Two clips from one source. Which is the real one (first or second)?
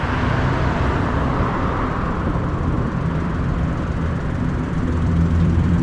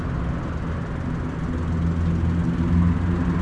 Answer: second